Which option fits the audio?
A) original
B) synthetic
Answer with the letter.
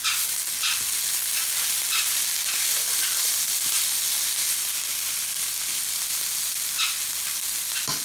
A